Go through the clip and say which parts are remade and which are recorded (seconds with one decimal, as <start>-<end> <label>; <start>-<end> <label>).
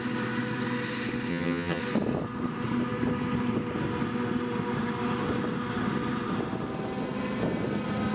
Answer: 0.0-1.3 recorded; 1.3-1.8 remade; 1.8-8.1 recorded